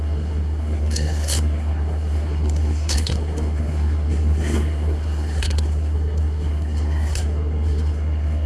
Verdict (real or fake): fake